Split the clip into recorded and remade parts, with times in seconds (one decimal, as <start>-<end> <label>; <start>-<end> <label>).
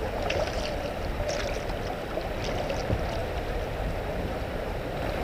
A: 0.0-1.4 remade; 1.4-3.2 recorded; 3.2-5.2 remade